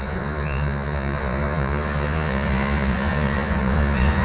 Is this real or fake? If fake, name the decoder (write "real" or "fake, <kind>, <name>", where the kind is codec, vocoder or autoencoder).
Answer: fake, vocoder, Vocos